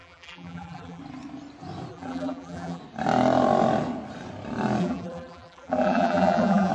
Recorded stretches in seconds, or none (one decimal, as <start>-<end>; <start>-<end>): 1.0-1.9; 2.8-4.8